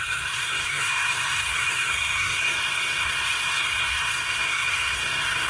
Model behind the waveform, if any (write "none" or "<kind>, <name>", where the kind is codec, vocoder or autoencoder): codec, SNAC